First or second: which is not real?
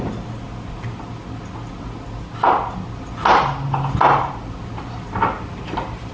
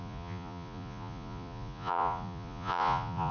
second